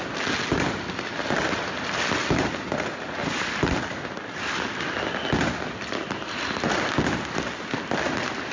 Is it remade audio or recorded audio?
recorded